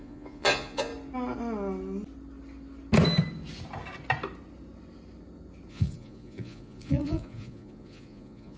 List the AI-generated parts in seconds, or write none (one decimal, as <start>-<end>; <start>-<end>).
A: 0.0-0.9; 5.7-8.6